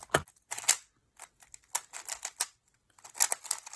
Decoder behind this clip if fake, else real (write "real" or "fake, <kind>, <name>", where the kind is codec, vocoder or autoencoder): real